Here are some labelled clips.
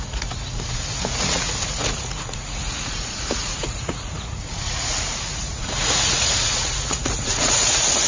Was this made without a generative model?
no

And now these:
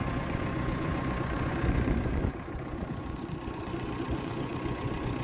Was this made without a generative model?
no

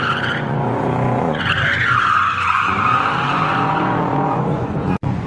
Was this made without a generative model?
no